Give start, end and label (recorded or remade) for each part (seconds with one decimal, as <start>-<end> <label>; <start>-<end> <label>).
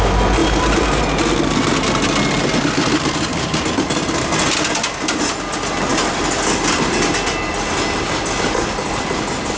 0.0-0.4 recorded; 0.4-1.0 remade; 1.0-3.3 recorded; 3.3-3.9 remade; 3.9-9.6 recorded